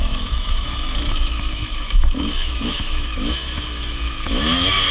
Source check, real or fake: fake